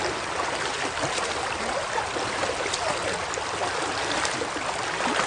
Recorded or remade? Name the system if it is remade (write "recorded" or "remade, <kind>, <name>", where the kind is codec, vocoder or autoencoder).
recorded